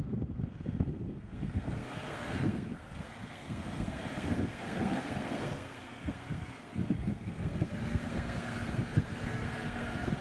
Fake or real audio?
fake